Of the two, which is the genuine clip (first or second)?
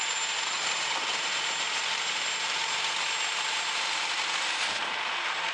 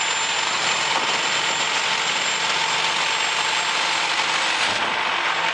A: second